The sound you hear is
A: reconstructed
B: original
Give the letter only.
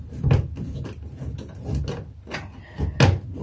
B